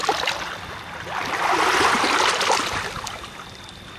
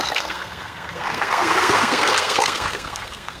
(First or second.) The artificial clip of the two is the second